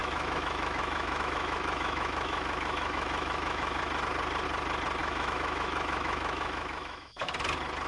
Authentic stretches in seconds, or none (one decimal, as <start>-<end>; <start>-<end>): 3.8-5.0; 7.3-7.9